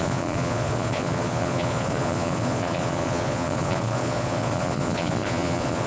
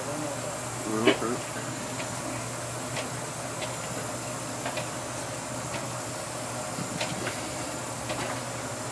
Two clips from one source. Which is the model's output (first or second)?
first